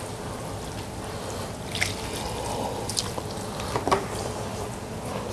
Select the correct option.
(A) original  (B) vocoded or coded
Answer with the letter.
A